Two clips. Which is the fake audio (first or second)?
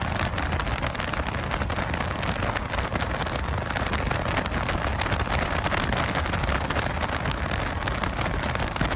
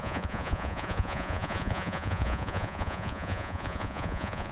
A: second